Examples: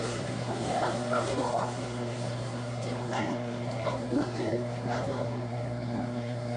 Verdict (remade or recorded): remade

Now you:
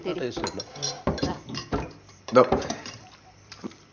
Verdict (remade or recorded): remade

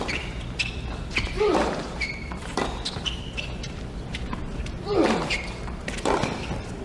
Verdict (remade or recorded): remade